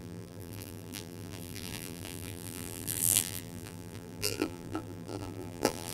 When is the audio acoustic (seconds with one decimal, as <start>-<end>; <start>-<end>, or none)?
none